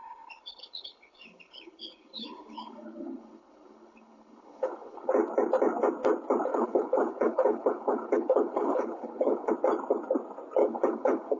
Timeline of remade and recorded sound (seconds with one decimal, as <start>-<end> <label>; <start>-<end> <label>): 0.0-5.1 remade; 5.1-6.5 recorded; 6.5-9.5 remade; 9.5-10.6 recorded; 10.6-11.4 remade